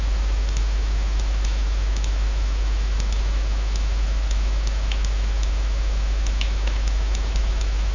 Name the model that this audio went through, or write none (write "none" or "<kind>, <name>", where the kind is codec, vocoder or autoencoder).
autoencoder, DAC-VAE